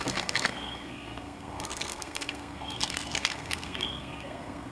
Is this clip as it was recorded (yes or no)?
no